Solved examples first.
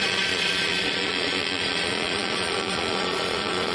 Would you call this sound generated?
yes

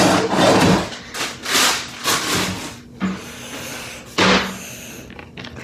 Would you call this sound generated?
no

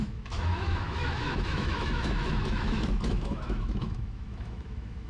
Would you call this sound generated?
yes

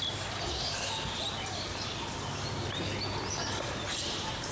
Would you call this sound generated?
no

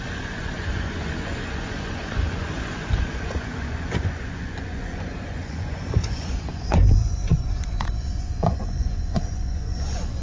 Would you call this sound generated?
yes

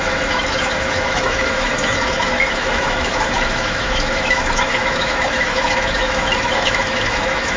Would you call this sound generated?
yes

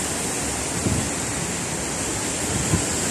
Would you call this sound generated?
no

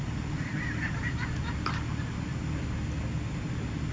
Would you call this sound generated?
no